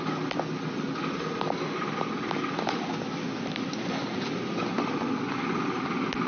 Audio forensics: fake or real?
real